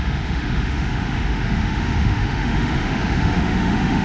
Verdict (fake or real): fake